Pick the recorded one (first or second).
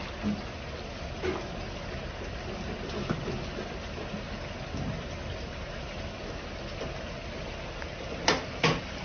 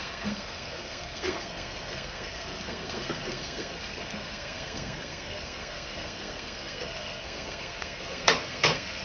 first